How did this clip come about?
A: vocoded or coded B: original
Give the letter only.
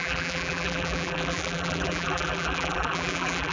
A